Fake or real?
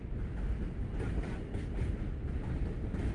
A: real